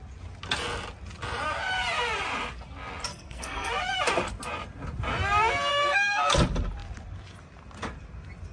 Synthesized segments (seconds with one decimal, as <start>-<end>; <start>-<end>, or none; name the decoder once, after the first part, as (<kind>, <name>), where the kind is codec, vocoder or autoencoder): 3.1-3.7 (codec, SNAC); 5.7-6.3